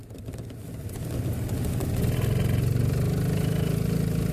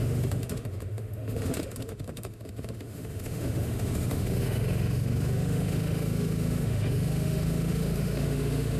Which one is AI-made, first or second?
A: second